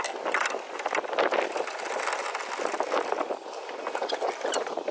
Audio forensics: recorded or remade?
recorded